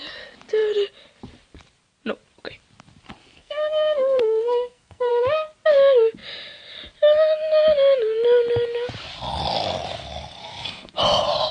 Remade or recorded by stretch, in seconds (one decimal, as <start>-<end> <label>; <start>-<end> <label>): 0.0-3.2 recorded; 3.2-5.1 remade; 5.1-10.4 recorded; 10.4-10.9 remade; 10.9-11.5 recorded